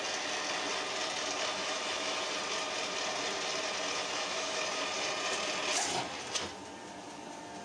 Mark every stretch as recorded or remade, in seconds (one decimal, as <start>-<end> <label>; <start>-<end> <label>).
0.0-1.6 recorded; 1.6-2.3 remade; 2.3-4.0 recorded; 4.0-4.8 remade; 4.8-7.6 recorded